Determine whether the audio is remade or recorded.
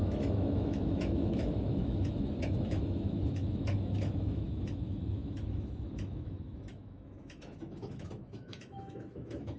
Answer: remade